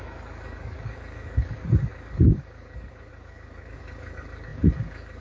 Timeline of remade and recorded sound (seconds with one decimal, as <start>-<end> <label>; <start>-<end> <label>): 0.0-5.2 remade